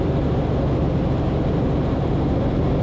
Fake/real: real